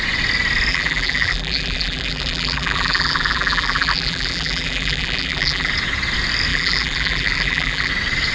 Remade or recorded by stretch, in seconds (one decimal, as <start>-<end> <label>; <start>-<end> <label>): 0.0-0.7 recorded; 0.7-5.7 remade; 5.7-6.5 recorded; 6.5-7.9 remade; 7.9-8.3 recorded